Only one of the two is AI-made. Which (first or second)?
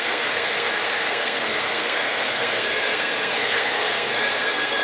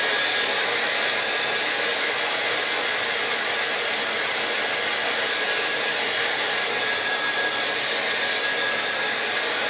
first